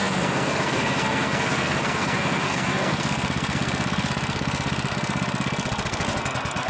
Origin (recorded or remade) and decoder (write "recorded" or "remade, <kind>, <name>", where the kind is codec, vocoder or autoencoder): remade, codec, SNAC